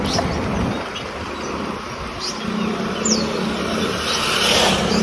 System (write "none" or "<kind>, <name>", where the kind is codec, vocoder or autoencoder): none